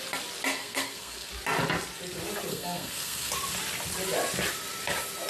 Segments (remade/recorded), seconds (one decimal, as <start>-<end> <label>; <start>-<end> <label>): 0.0-0.6 recorded; 0.6-1.3 remade; 1.3-2.5 recorded; 2.5-3.3 remade; 3.3-5.3 recorded